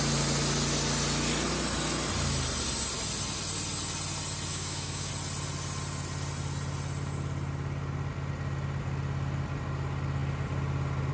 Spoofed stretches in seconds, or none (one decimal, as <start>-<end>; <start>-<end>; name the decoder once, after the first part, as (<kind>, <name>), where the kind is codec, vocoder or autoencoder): 4.5-5.1 (autoencoder, DAC-VAE)